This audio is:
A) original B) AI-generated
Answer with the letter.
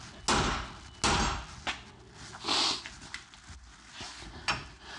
A